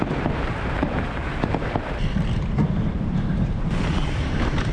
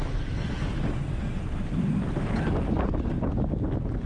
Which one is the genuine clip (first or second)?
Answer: second